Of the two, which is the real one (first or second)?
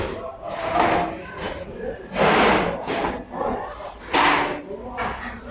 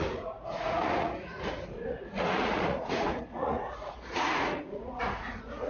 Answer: first